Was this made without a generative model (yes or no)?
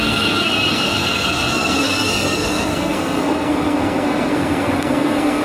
no